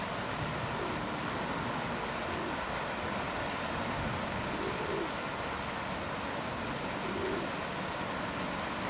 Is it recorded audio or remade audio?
recorded